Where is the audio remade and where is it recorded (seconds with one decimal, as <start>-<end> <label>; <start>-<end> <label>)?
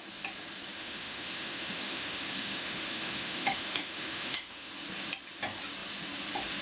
0.0-0.8 recorded; 0.8-4.7 remade; 4.7-6.6 recorded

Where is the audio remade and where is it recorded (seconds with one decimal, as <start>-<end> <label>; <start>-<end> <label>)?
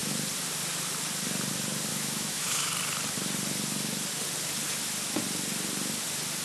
0.0-1.9 recorded; 1.9-2.7 remade; 2.7-6.4 recorded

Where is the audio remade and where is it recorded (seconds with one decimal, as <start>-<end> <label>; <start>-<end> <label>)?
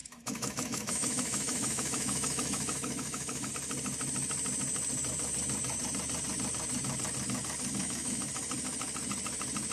0.0-3.5 remade; 3.5-7.8 recorded; 7.8-8.3 remade; 8.3-9.7 recorded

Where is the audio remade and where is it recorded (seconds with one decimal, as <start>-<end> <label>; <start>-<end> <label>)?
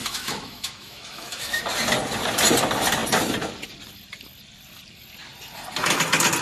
0.0-1.6 remade; 1.6-6.4 recorded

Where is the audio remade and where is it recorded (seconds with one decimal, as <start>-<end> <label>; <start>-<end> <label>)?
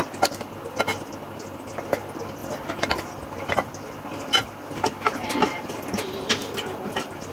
0.0-7.3 recorded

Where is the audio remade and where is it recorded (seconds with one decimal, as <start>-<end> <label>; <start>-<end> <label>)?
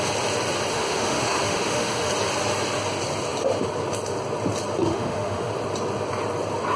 0.0-0.7 recorded; 0.7-2.1 remade; 2.1-4.9 recorded; 4.9-5.5 remade; 5.5-6.8 recorded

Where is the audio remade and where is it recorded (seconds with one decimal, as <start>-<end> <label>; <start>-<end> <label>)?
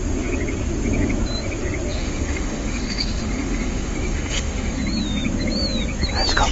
0.0-1.9 recorded; 1.9-4.8 remade; 4.8-6.5 recorded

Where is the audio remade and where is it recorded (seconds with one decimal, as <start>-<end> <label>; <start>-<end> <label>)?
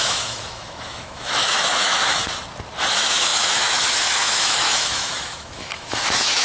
0.0-2.2 remade; 2.2-2.9 recorded; 2.9-6.4 remade